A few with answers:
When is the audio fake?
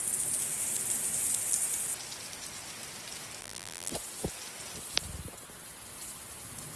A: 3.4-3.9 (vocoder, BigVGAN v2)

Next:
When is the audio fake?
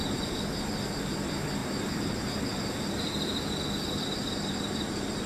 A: 0.0-0.7 (vocoder, BigVGAN v2); 1.6-2.6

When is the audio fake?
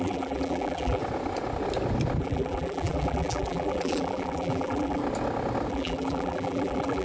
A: 0.0-1.0 (vocoder, BigVGAN v2); 2.2-5.0; 5.7-7.0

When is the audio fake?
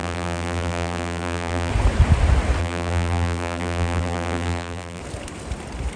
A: 0.0-1.7 (vocoder, BigVGAN v2); 2.6-5.0